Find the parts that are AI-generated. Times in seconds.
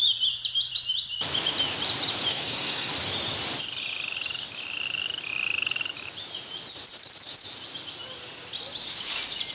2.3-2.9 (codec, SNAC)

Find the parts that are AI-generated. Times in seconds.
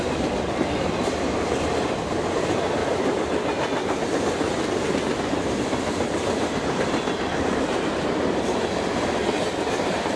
0.0-2.8 (vocoder, BigVGAN v2); 4.6-10.2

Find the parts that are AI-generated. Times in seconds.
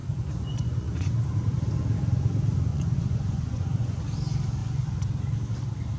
0.0-1.1 (vocoder, Vocos); 2.7-4.0; 4.6-5.1